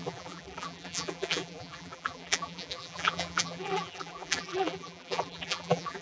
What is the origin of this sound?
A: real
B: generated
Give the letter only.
B